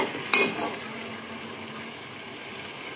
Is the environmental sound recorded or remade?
recorded